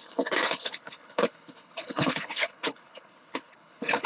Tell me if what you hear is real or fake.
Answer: fake